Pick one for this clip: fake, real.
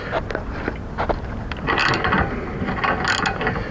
real